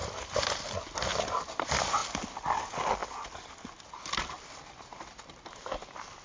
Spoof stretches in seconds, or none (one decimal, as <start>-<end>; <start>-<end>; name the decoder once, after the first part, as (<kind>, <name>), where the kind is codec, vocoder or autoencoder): none